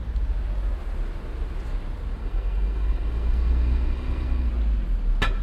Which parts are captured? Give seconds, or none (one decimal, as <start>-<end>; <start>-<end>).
0.0-2.2; 4.5-5.4